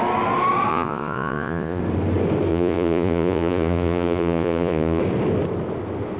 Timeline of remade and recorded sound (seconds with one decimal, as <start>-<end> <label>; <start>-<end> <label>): 0.0-0.7 recorded; 0.7-1.8 remade; 1.8-2.5 recorded; 2.5-5.0 remade; 5.0-6.2 recorded